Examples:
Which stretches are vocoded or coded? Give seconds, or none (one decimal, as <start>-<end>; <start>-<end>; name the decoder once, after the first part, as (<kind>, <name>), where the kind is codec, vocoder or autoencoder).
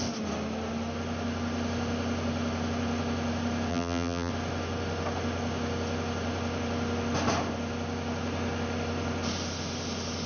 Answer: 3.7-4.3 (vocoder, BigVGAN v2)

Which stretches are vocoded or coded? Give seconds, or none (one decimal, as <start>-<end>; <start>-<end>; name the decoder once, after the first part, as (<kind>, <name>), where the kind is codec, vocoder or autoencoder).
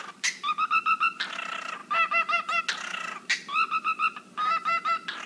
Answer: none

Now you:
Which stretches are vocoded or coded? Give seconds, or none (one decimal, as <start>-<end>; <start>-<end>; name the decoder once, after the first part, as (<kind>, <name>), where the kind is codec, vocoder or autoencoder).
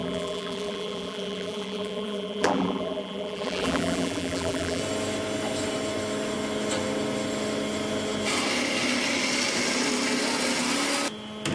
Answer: 0.0-4.8 (vocoder, BigVGAN v2)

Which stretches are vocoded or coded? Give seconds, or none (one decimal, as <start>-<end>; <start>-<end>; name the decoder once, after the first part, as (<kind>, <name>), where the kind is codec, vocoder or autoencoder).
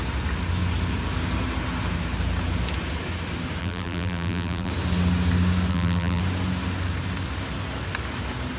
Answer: 3.6-4.7 (vocoder, BigVGAN v2); 5.7-6.2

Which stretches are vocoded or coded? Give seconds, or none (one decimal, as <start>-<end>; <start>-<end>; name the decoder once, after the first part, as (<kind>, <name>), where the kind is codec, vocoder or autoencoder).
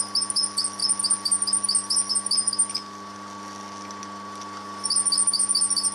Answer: none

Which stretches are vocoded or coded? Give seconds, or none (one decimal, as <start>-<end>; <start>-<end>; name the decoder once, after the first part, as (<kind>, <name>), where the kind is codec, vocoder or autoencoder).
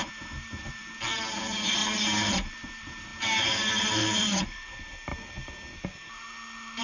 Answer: 0.0-1.8 (vocoder, BigVGAN v2); 2.3-3.1; 4.0-5.1